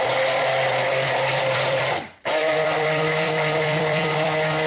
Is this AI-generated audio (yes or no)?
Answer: yes